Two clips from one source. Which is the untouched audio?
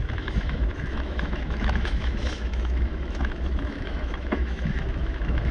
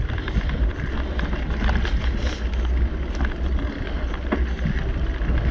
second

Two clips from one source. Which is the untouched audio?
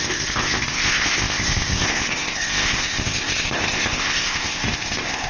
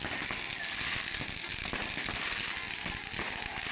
second